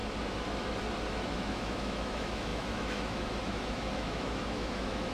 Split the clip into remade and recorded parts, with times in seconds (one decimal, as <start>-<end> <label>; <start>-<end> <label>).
0.0-1.1 recorded; 1.1-5.1 remade